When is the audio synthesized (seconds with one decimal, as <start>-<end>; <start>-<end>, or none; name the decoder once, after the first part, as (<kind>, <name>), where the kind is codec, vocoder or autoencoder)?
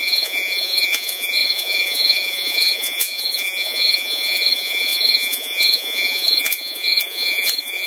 0.0-7.9 (vocoder, Vocos)